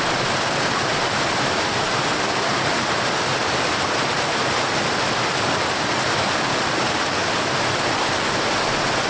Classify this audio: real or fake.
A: real